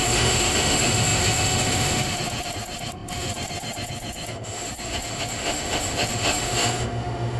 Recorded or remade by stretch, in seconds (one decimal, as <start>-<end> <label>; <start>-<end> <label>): 0.0-7.4 remade